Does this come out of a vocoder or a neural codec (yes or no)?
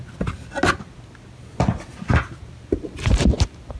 no